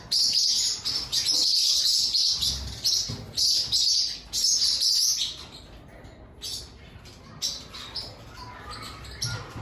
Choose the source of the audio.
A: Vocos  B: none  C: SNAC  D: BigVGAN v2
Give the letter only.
B